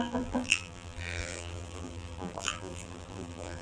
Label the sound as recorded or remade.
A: remade